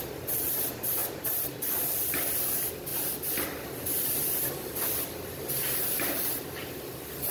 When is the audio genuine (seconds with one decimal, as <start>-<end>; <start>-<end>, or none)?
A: 0.0-7.3